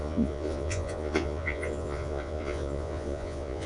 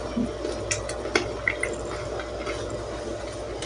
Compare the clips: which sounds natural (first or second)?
second